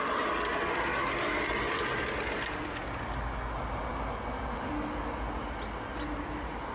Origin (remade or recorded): recorded